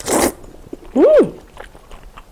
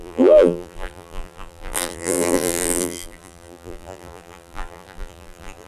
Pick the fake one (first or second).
second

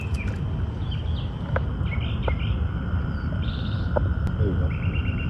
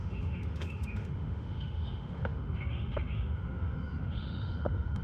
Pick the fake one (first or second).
second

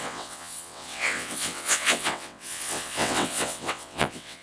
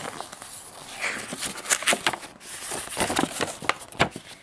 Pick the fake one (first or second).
first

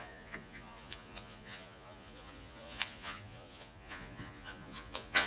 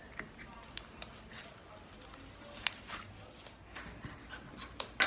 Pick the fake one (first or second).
first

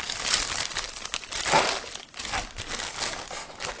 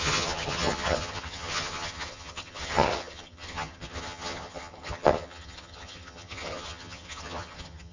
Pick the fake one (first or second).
second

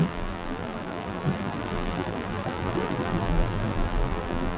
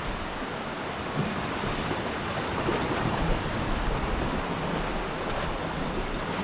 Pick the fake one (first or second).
first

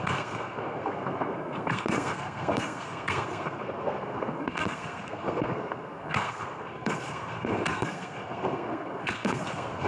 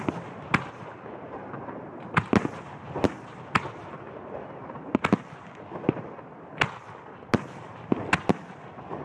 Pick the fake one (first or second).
first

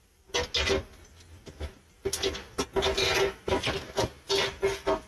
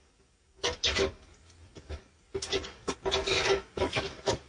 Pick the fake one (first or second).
second